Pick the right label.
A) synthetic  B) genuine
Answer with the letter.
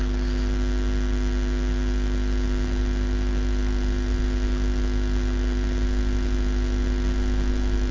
B